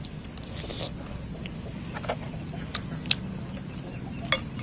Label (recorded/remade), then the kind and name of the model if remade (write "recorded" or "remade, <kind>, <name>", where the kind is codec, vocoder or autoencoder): recorded